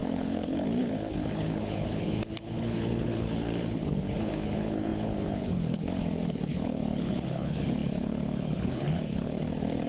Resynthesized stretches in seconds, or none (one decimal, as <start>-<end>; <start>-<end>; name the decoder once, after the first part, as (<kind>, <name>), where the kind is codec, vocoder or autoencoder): 0.0-9.9 (codec, HILCodec)